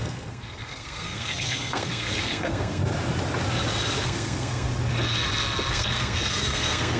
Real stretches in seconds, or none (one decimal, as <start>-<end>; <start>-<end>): 2.8-4.0; 4.7-5.7